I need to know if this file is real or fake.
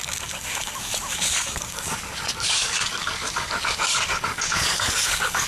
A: fake